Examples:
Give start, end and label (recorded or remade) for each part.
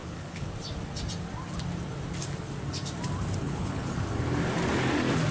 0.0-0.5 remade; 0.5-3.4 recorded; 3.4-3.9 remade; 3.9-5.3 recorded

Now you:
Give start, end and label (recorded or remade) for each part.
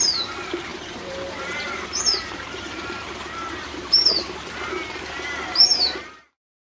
0.0-6.7 remade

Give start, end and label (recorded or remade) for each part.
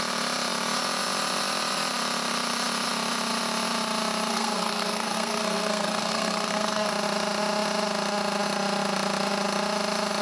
0.0-4.3 recorded; 4.3-6.9 remade; 6.9-10.2 recorded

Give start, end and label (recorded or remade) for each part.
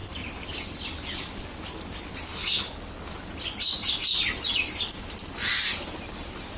0.0-0.9 recorded; 0.9-2.3 remade; 2.3-4.8 recorded; 4.8-6.6 remade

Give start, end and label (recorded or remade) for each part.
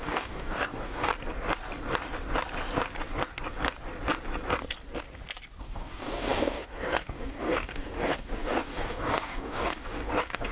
0.0-1.1 remade; 1.1-5.6 recorded; 5.6-10.5 remade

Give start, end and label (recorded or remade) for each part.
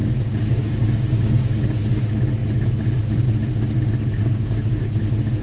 0.0-1.8 remade; 1.8-4.2 recorded; 4.2-4.9 remade; 4.9-5.4 recorded